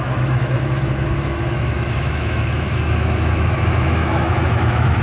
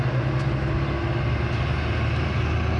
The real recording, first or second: second